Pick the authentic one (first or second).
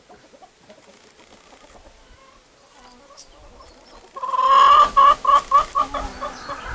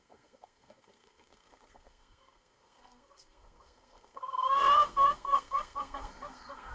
first